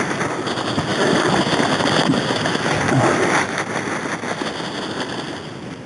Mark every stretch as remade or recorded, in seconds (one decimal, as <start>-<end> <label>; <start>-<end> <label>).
0.0-5.9 recorded